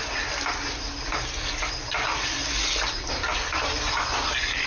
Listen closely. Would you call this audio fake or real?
real